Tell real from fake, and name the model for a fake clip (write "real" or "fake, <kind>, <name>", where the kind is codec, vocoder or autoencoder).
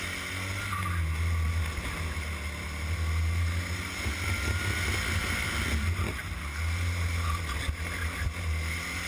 real